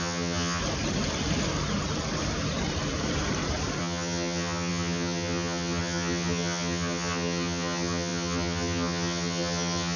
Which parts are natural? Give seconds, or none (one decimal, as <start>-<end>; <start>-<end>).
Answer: 0.6-3.8